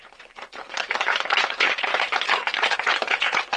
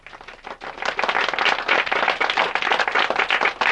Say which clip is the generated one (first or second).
first